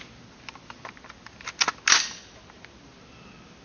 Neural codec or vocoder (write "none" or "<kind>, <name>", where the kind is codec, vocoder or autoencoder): none